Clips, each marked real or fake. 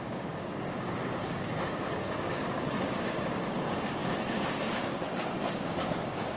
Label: fake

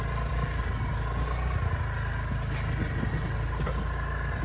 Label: real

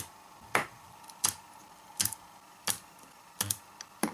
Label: real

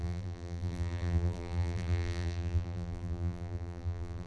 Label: fake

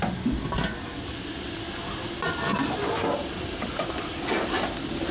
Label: real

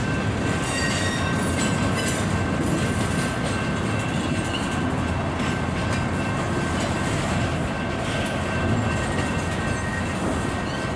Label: real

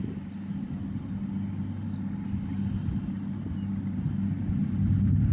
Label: real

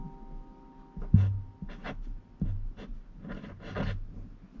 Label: real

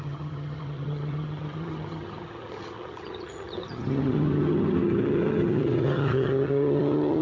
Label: fake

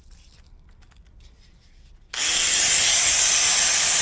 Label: real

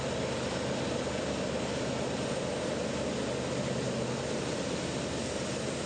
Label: real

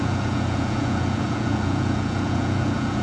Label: fake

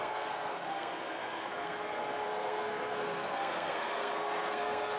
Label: fake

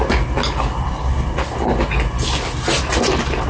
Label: real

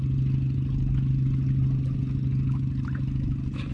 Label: real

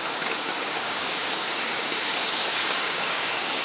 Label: fake